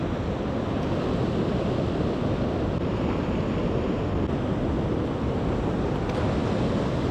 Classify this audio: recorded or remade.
recorded